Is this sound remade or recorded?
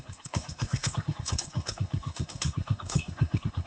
remade